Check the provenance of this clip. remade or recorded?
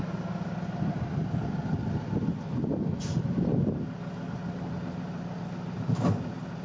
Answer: recorded